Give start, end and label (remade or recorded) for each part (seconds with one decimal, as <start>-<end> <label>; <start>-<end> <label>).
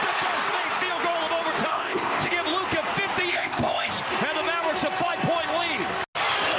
0.0-1.7 recorded; 1.7-2.3 remade; 2.3-3.3 recorded; 3.3-3.9 remade; 3.9-6.6 recorded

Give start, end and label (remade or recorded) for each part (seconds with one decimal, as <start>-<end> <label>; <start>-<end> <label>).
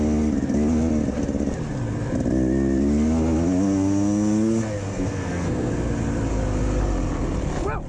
0.0-4.9 recorded; 4.9-5.7 remade; 5.7-7.9 recorded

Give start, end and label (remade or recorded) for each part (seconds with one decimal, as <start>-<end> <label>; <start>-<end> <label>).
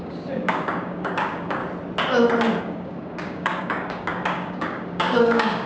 0.0-1.6 remade; 1.6-2.6 recorded; 2.6-5.7 remade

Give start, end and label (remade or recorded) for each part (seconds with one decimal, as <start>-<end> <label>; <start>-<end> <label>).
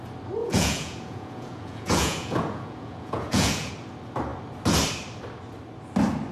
0.0-0.4 recorded; 0.4-3.7 remade; 3.7-6.3 recorded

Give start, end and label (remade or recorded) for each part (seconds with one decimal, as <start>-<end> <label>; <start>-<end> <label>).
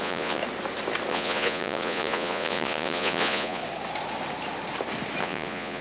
0.0-0.4 remade; 0.4-1.1 recorded; 1.1-3.6 remade; 3.6-5.2 recorded; 5.2-5.8 remade